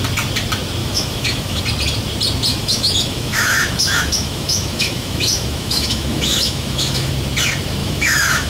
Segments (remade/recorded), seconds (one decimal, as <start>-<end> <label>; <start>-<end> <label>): 0.0-0.8 recorded; 0.8-1.6 remade; 1.6-2.5 recorded; 2.5-7.1 remade; 7.1-7.8 recorded; 7.8-8.5 remade